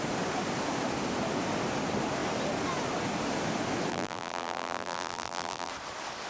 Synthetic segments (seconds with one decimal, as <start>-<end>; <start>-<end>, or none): 3.9-5.7